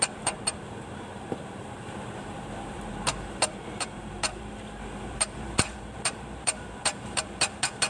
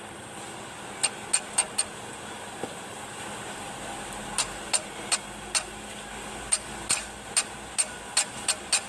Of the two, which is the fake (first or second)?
first